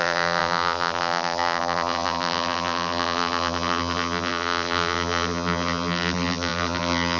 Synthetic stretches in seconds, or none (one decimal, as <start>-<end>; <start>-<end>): 0.0-7.2